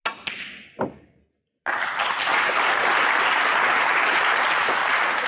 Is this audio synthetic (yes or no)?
no